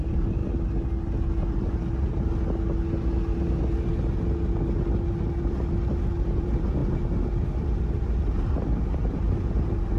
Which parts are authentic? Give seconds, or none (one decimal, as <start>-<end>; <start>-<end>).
0.4-5.5